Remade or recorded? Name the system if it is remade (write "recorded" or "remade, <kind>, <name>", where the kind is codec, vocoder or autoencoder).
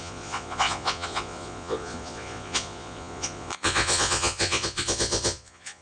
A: remade, vocoder, Vocos